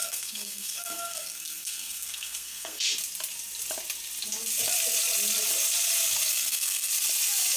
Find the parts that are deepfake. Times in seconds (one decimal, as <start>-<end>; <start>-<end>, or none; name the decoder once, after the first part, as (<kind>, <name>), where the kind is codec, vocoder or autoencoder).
0.0-2.9 (codec, SNAC); 6.3-6.9